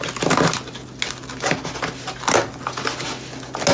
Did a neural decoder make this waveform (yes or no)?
no